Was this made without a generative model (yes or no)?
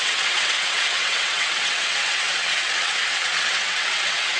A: no